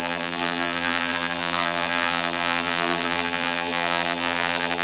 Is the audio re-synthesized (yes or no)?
yes